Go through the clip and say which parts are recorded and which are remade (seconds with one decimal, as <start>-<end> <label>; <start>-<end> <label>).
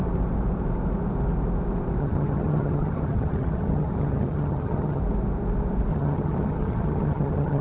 0.0-2.0 recorded; 2.0-5.0 remade; 5.0-5.9 recorded; 5.9-7.6 remade